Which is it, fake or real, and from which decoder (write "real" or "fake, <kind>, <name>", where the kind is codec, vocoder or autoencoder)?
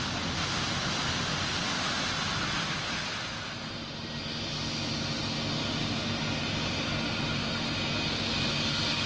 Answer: real